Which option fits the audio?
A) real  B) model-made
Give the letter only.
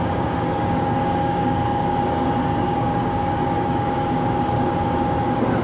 B